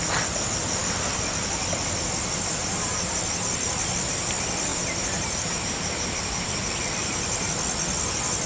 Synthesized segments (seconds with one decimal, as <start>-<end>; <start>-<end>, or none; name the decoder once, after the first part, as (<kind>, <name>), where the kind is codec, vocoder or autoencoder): 2.6-3.2 (vocoder, BigVGAN v2); 4.7-6.5; 7.0-7.5